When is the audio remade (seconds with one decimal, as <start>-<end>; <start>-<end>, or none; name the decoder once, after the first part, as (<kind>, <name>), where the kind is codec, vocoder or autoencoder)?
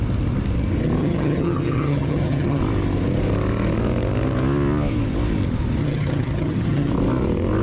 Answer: 1.0-2.6 (vocoder, HiFi-GAN); 5.8-6.9